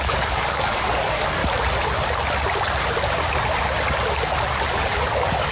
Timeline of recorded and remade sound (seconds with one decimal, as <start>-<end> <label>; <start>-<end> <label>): 0.0-1.4 remade; 1.4-4.7 recorded; 4.7-5.5 remade